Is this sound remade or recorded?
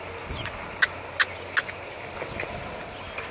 recorded